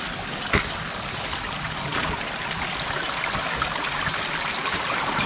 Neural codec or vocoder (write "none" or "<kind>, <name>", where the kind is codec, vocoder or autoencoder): none